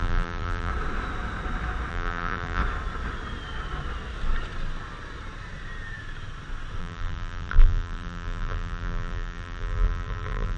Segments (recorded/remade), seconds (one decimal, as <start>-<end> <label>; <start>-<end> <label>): 0.0-0.7 remade; 0.7-1.9 recorded; 1.9-2.6 remade; 2.6-6.8 recorded; 6.8-10.6 remade